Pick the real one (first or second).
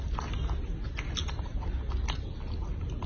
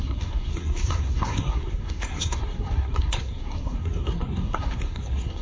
first